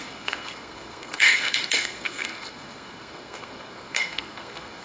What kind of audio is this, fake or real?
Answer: fake